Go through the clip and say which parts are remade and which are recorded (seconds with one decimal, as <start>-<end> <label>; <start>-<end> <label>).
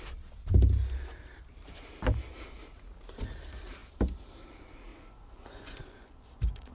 0.0-4.9 recorded; 4.9-6.7 remade